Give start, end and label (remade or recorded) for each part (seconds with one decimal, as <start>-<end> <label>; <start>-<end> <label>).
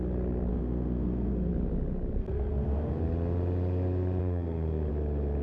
0.0-0.5 recorded; 0.5-1.5 remade; 1.5-2.2 recorded; 2.2-3.0 remade; 3.0-4.2 recorded; 4.2-4.9 remade; 4.9-5.4 recorded